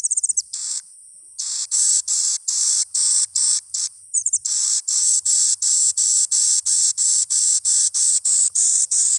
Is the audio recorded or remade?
remade